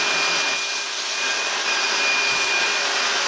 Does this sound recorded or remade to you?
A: recorded